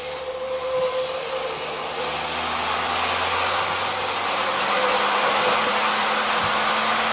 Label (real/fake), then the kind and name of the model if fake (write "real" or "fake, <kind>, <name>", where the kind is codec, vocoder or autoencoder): real